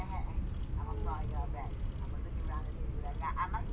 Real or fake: real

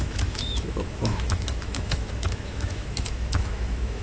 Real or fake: fake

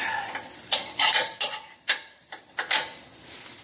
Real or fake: real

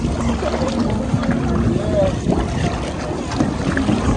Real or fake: real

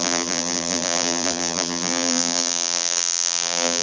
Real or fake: fake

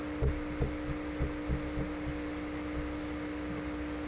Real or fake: real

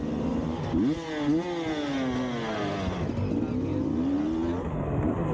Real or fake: real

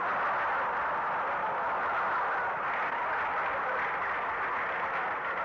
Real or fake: real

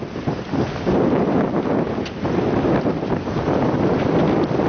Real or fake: real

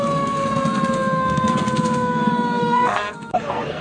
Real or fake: fake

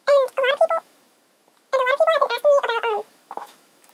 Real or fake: fake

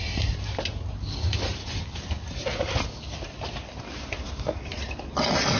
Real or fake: real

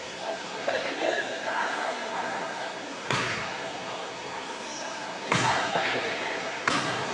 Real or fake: fake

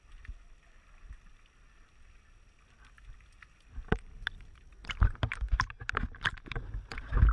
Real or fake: real